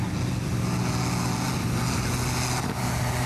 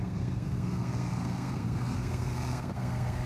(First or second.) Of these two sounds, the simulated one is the second